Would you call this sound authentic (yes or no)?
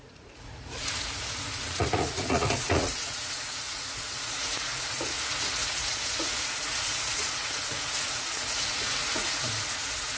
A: no